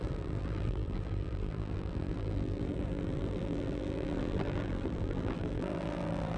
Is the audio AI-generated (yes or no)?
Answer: yes